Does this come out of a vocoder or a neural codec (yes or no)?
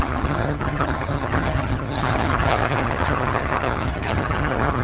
yes